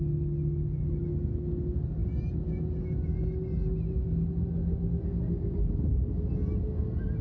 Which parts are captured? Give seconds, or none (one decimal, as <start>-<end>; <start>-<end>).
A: 0.0-7.2